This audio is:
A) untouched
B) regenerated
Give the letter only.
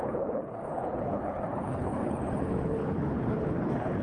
B